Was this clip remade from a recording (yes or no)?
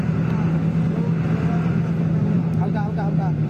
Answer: no